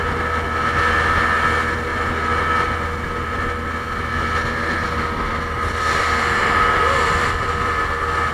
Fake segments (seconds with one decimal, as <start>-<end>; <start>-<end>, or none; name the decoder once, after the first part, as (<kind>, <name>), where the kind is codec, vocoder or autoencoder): 5.3-7.8 (vocoder, BigVGAN v2)